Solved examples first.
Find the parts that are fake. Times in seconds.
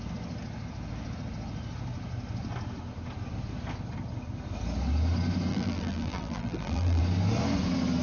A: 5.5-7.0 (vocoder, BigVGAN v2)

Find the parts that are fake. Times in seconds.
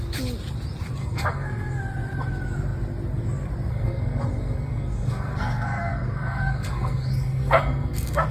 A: 1.0-1.8 (codec, SNAC); 3.7-8.3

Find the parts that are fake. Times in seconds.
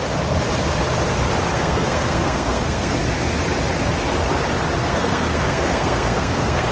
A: 1.5-3.0 (codec, SNAC); 4.8-6.7